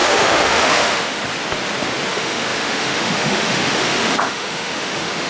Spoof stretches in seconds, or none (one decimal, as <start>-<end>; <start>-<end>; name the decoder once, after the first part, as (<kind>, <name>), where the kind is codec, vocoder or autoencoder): 0.0-1.2 (autoencoder, DAC-VAE); 2.1-5.3